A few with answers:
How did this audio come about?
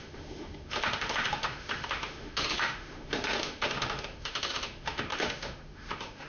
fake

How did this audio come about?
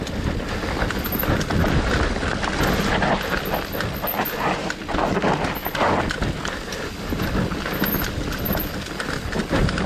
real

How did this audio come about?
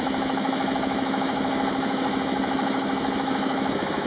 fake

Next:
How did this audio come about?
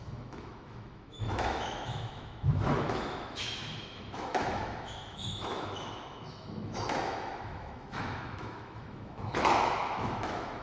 fake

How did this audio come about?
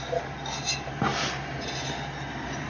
real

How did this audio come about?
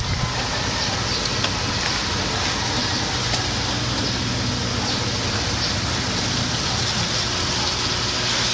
real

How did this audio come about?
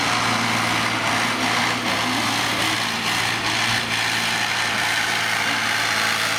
real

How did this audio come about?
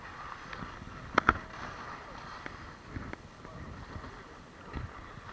real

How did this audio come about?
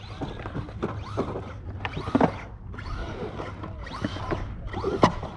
real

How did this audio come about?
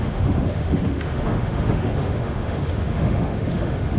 fake